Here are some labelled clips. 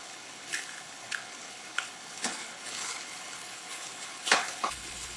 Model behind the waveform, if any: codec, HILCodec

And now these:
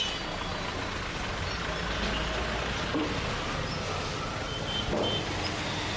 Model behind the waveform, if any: none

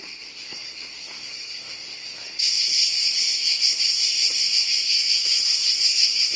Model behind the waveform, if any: codec, SNAC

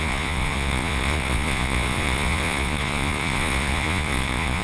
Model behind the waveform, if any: vocoder, Vocos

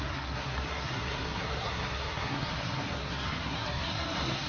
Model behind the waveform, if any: codec, SNAC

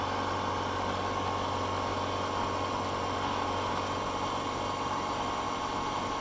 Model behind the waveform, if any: none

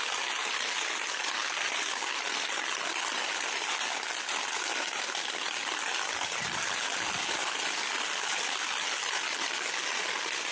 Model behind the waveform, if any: none